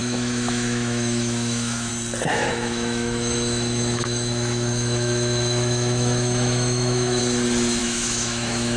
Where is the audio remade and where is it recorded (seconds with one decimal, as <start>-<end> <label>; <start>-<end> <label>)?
0.0-1.9 remade; 1.9-2.3 recorded; 2.3-7.2 remade; 7.2-7.8 recorded; 7.8-8.8 remade